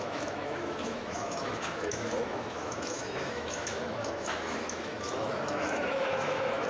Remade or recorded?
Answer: remade